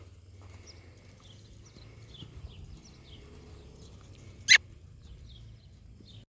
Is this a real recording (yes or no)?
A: yes